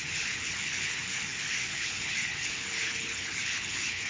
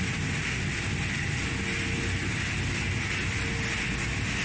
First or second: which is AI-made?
first